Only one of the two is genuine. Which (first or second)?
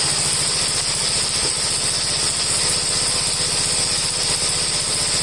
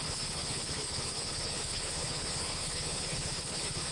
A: first